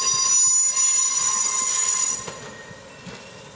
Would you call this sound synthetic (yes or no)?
no